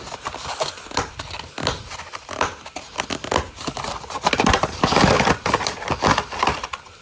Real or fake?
fake